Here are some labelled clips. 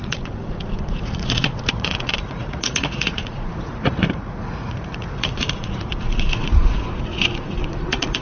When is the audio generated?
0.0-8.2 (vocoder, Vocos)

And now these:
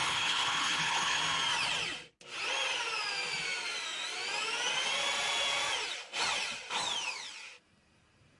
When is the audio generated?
0.0-1.2 (codec, HILCodec)

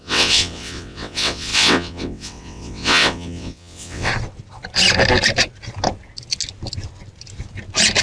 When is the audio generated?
0.0-4.1 (vocoder, WaveNeXt)

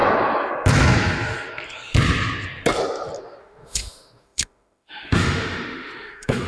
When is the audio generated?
3.4-6.5 (autoencoder, DAC-VAE)

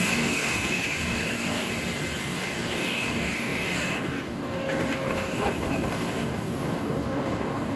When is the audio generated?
0.0-1.7 (codec, DAC); 2.2-7.8